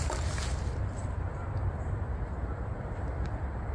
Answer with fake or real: real